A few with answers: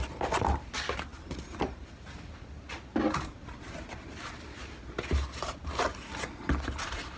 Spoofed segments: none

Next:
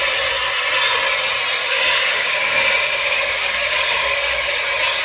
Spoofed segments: 1.6-4.6 (codec, DAC)

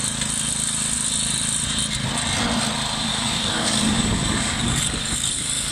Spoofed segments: 3.1-5.7 (codec, DAC)

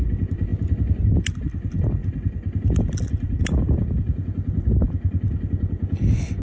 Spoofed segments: none

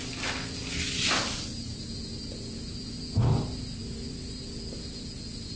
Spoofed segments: none